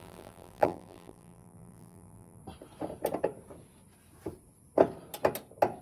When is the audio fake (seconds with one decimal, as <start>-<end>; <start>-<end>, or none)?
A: 0.0-2.4